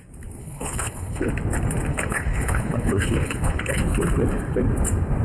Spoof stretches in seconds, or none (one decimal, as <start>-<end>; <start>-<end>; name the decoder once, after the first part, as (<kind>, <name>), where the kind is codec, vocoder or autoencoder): 0.4-1.3 (codec, HILCodec); 1.9-3.8